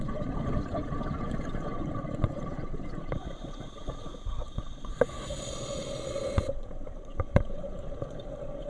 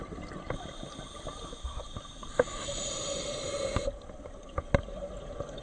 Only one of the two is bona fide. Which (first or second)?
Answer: second